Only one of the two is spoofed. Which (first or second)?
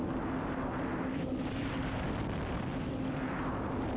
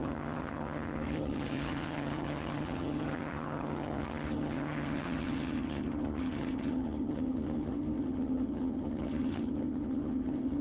second